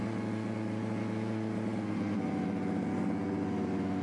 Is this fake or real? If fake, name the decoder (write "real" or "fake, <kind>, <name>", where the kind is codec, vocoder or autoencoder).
real